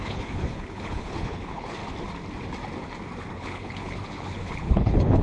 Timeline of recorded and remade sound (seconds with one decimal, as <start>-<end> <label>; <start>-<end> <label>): 0.0-1.8 remade; 1.8-3.3 recorded; 3.3-5.2 remade